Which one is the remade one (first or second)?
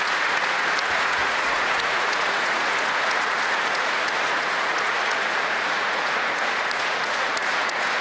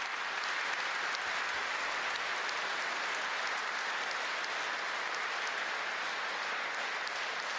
first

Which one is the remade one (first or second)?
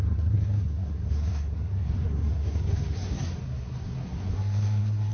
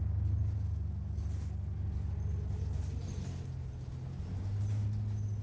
first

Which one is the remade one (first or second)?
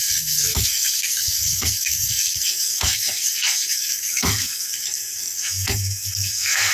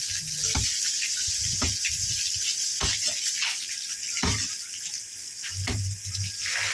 first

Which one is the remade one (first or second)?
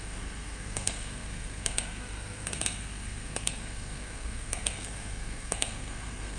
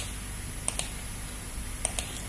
first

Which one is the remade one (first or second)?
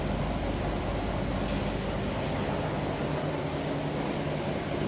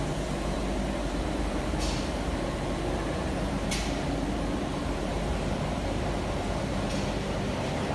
second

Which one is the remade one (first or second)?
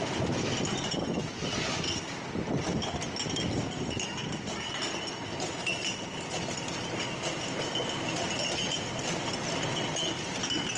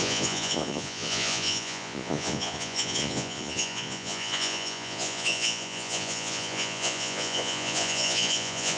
second